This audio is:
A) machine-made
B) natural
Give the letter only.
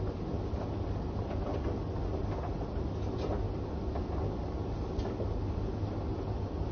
B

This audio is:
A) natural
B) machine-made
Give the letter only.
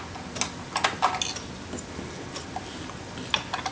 A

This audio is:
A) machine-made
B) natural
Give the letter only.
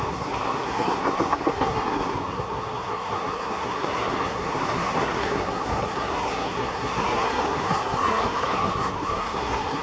A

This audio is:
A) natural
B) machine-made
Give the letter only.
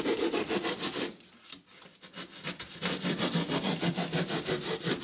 A